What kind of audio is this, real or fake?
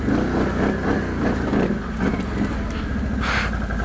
real